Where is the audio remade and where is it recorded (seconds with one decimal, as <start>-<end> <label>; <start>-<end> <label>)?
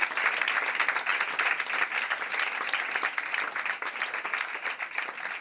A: 0.0-5.4 recorded